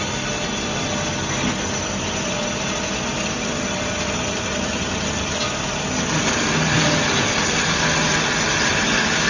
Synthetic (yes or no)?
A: no